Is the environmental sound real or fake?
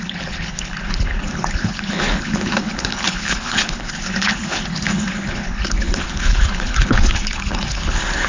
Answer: fake